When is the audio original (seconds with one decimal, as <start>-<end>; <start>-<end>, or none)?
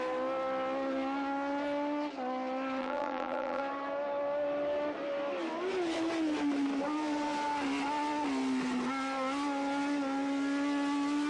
0.0-2.8; 3.6-11.3